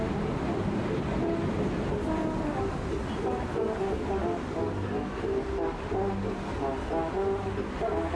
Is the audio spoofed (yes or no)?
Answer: no